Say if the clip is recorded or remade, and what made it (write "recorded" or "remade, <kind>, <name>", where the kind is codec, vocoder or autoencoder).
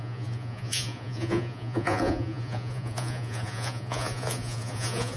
remade, vocoder, Vocos